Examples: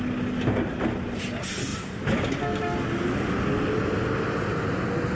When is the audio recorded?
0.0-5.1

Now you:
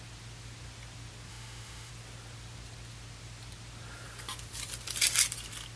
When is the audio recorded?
0.0-1.3; 1.9-5.8